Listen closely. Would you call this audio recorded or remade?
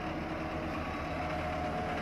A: recorded